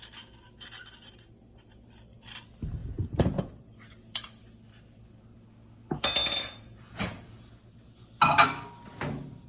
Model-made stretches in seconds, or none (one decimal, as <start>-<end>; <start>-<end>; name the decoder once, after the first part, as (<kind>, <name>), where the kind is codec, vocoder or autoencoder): 2.8-3.5 (vocoder, Vocos); 6.2-7.4